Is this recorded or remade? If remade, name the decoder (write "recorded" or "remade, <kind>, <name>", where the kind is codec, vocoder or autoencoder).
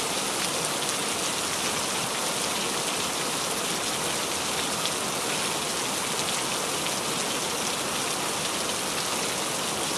recorded